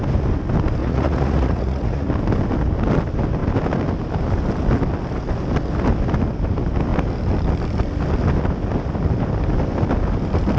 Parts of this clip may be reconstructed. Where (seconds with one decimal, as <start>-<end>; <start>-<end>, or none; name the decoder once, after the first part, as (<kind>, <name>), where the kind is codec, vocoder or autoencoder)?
0.8-2.1 (vocoder, Vocos)